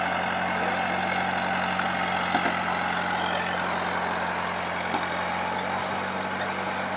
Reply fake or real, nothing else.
real